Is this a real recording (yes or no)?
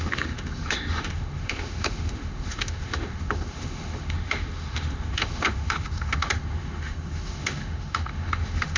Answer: no